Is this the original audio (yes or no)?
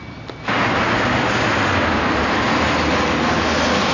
yes